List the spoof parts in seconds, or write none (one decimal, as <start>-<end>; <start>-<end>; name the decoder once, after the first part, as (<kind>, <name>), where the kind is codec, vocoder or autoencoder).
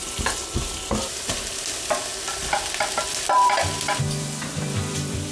1.1-2.1 (vocoder, BigVGAN v2); 2.6-5.3